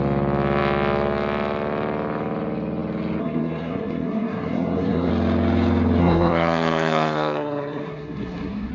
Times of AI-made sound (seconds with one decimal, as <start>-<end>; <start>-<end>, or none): 3.2-5.1; 6.0-8.7